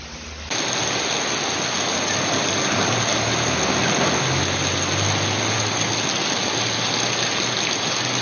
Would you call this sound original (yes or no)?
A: yes